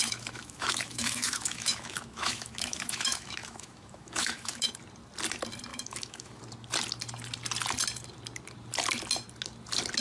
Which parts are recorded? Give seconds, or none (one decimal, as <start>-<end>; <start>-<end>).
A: 4.7-5.7; 6.4-10.0